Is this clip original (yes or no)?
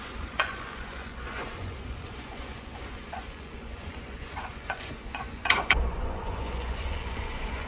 no